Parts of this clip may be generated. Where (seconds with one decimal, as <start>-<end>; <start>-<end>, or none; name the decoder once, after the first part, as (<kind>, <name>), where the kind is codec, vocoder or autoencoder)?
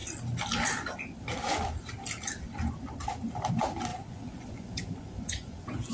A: 3.9-5.9 (vocoder, Vocos)